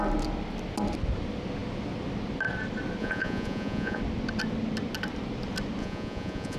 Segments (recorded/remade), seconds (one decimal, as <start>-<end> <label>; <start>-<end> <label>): 0.0-3.0 recorded; 3.0-4.0 remade; 4.0-5.8 recorded; 5.8-6.6 remade